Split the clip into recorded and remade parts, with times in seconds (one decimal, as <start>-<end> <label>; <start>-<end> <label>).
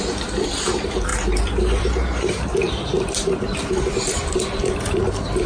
0.0-5.5 remade